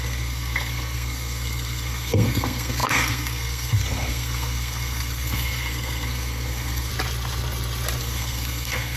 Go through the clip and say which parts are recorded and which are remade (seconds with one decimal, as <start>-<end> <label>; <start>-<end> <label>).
0.0-6.9 remade; 6.9-8.0 recorded; 8.0-9.0 remade